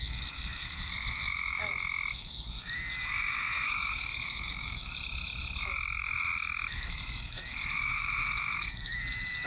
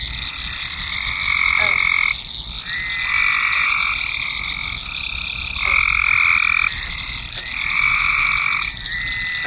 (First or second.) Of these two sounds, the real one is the second